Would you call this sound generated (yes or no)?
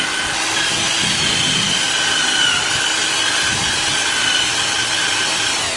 no